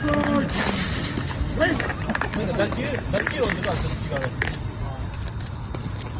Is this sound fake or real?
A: real